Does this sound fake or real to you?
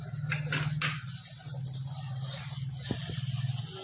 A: real